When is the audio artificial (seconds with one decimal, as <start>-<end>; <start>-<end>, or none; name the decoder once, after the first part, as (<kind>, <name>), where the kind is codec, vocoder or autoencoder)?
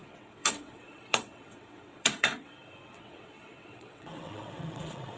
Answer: 0.0-5.2 (vocoder, WaveNeXt)